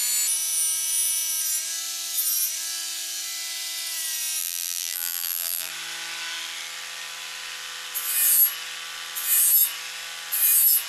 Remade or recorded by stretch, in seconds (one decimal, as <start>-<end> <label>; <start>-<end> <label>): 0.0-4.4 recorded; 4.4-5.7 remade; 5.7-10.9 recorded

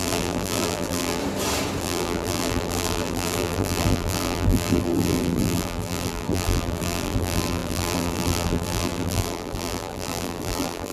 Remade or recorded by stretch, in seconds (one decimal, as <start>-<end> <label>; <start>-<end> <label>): 0.0-1.2 remade; 1.2-1.8 recorded; 1.8-10.9 remade

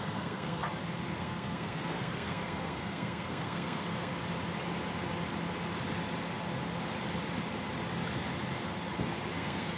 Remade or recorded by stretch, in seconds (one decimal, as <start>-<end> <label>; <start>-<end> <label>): 0.0-0.6 remade; 0.6-1.2 recorded; 1.2-4.1 remade; 4.1-9.3 recorded; 9.3-9.8 remade

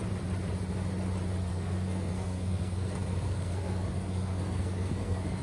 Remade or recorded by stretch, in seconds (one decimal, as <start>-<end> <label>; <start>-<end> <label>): 0.0-1.5 recorded; 1.5-5.4 remade

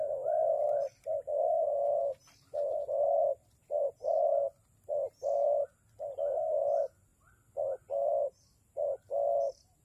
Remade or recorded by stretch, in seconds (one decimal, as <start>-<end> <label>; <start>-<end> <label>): 0.0-9.8 recorded